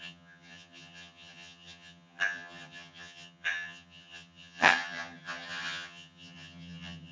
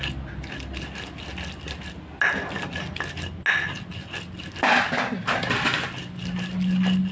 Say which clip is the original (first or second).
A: second